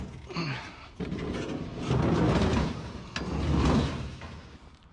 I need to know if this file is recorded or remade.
recorded